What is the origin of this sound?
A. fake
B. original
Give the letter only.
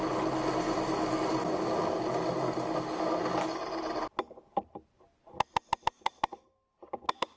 B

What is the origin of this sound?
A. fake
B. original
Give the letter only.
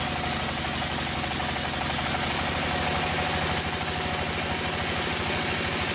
B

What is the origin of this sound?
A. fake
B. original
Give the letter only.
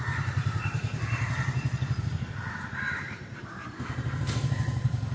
A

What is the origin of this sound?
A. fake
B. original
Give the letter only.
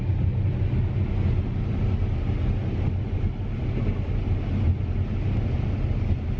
B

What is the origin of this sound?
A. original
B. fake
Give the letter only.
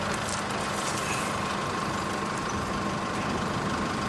A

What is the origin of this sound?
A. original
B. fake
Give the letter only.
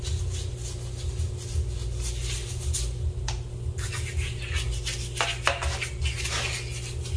A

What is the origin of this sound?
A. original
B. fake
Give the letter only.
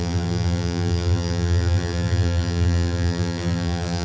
B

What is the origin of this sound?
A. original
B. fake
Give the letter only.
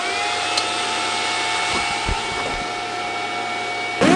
A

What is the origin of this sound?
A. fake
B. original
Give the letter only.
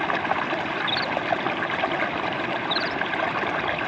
B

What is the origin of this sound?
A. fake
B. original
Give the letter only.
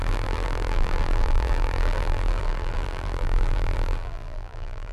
A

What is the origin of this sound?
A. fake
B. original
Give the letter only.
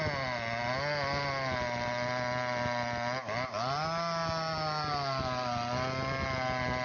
B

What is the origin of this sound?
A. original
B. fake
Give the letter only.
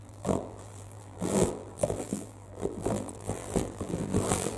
B